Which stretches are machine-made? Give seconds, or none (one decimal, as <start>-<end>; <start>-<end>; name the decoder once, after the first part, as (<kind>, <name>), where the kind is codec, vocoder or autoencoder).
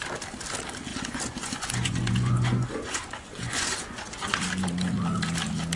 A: 0.9-4.4 (vocoder, Vocos)